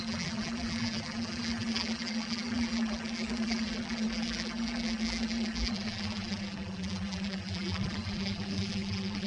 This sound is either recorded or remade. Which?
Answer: remade